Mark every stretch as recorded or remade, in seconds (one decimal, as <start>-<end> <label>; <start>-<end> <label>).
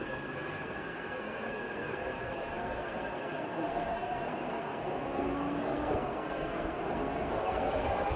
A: 0.0-8.2 remade